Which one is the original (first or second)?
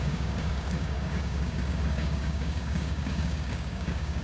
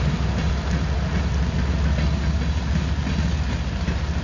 second